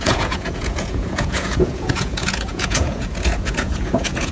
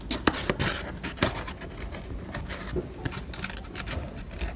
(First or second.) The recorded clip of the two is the second